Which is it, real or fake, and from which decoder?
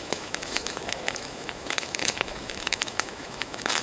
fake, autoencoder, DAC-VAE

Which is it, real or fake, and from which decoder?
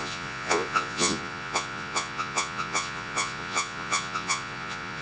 fake, vocoder, Vocos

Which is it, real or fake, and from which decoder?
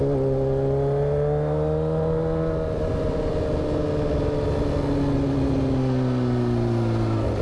real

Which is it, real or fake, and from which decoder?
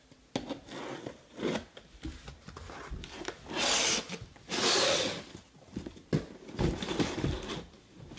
real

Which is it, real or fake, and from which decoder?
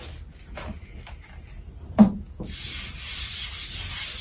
real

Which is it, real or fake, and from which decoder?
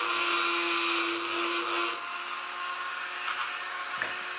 real